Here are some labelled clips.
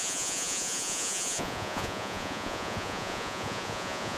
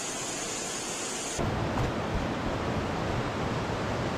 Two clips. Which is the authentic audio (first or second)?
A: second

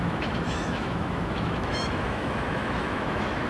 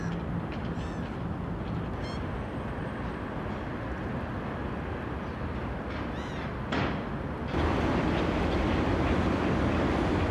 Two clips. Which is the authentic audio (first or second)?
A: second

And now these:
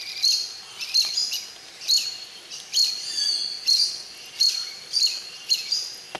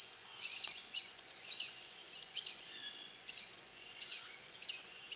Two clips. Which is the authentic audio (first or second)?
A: first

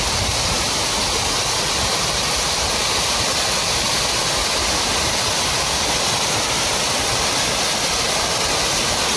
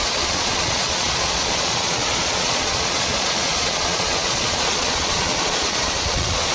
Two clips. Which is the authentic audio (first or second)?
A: first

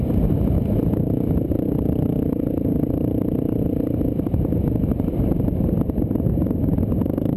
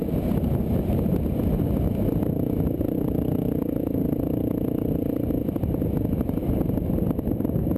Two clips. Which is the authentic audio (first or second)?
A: second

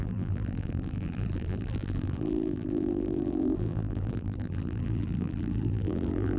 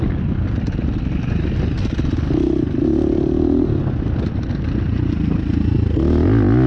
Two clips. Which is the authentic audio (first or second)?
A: second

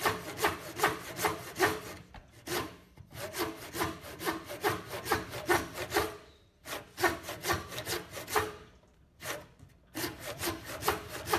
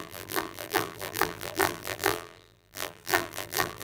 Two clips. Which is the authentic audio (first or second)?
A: first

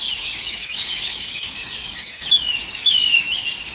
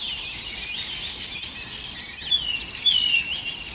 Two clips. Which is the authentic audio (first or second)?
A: second